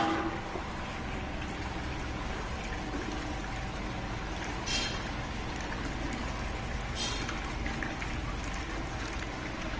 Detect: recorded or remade recorded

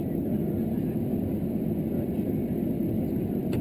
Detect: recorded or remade remade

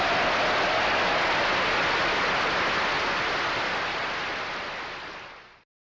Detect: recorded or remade recorded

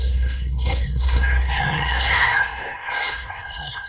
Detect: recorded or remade remade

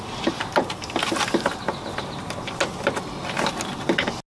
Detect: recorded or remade recorded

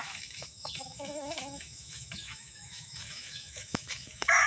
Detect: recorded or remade remade